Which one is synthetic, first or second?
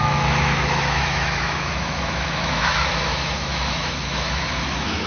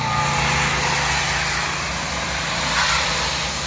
first